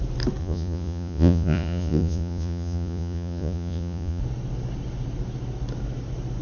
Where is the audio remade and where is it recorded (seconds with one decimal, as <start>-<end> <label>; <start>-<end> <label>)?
0.0-0.4 recorded; 0.4-4.2 remade; 4.2-6.4 recorded